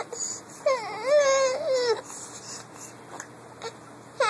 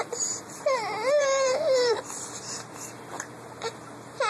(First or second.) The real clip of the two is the first